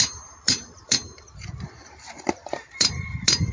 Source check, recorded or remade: remade